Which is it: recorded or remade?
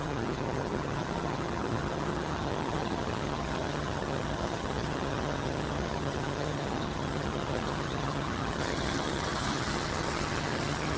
remade